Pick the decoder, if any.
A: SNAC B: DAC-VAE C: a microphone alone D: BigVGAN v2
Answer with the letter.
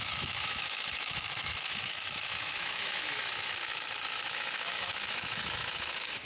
B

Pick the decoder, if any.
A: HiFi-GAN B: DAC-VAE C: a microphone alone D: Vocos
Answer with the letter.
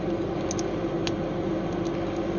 C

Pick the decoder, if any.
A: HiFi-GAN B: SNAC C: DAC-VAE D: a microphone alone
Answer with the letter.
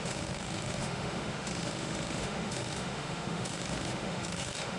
C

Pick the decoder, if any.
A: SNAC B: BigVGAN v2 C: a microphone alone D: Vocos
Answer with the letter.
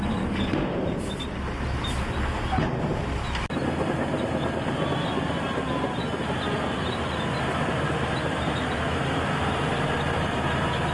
C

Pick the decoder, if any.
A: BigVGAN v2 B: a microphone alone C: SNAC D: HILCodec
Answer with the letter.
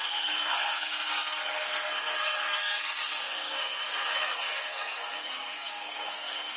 C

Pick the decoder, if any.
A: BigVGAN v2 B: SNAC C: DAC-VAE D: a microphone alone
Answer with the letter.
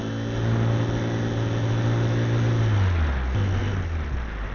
D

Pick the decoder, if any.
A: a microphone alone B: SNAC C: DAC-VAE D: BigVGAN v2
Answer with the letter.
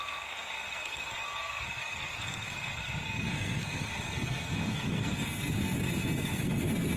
B